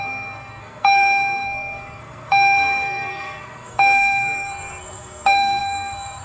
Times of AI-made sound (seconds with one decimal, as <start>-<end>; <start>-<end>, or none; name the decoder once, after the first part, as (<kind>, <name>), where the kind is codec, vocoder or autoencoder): 0.0-6.2 (codec, SNAC)